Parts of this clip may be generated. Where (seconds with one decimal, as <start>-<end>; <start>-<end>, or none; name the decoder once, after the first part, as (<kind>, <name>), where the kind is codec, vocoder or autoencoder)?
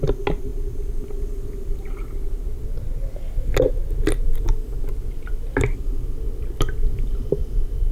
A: none